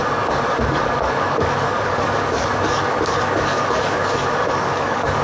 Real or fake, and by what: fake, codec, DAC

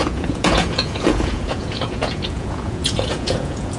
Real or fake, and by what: fake, vocoder, Vocos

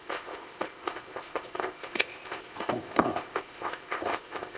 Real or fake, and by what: fake, codec, ZipCodec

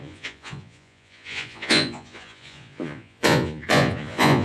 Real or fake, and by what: fake, vocoder, Vocos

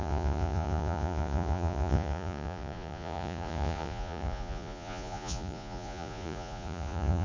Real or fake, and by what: fake, vocoder, Vocos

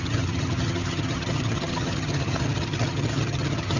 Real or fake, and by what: fake, vocoder, HiFi-GAN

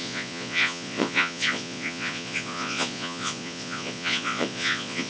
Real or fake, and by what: fake, vocoder, Vocos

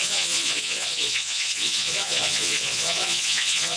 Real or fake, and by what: fake, vocoder, Vocos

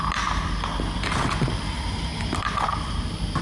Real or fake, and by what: fake, vocoder, BigVGAN v2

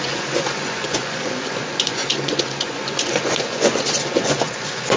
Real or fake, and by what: fake, vocoder, Vocos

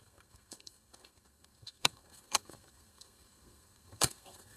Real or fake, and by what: fake, codec, SNAC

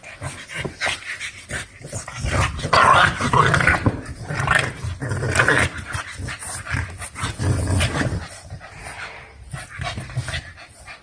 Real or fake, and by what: real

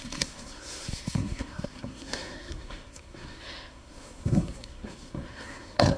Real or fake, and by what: fake, codec, SNAC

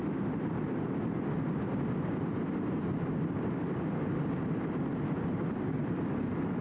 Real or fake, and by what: fake, vocoder, BigVGAN v2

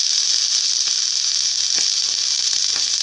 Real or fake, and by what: real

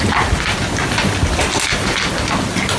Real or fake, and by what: real